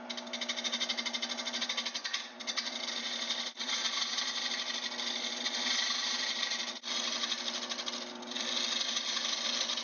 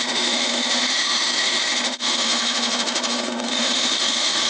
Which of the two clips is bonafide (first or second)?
first